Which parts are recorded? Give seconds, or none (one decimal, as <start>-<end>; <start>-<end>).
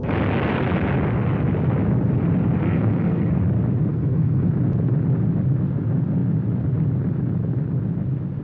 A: 0.0-2.6; 3.3-3.9; 4.5-8.4